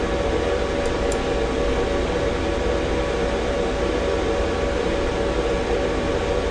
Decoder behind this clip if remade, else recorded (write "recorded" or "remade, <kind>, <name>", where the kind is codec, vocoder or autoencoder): recorded